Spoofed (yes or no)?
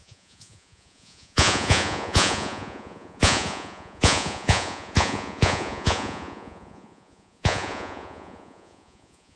yes